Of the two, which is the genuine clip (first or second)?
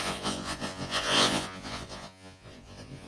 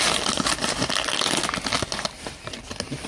second